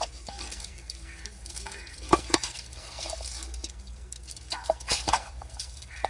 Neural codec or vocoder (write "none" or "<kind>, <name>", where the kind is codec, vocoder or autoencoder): codec, SNAC